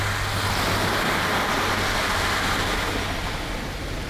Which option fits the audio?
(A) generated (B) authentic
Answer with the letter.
B